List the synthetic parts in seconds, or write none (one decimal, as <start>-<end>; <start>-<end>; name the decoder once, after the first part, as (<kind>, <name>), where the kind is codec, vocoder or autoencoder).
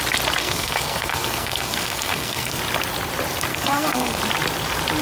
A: 0.4-2.6 (codec, SNAC); 3.5-4.2